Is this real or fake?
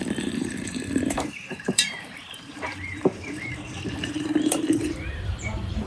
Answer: fake